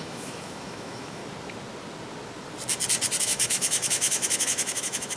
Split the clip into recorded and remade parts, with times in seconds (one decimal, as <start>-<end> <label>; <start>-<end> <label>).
0.0-1.2 remade; 1.2-3.2 recorded; 3.2-5.2 remade

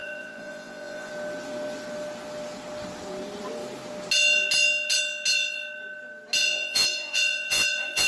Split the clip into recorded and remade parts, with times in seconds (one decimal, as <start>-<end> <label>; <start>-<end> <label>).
0.0-1.1 remade; 1.1-6.4 recorded; 6.4-8.1 remade